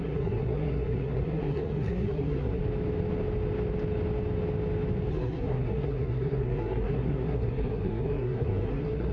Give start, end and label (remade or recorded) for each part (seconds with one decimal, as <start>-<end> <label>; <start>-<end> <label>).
0.0-2.6 remade; 2.6-5.1 recorded; 5.1-9.1 remade